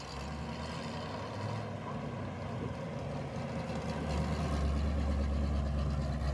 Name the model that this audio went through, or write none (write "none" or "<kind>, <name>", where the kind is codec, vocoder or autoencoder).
none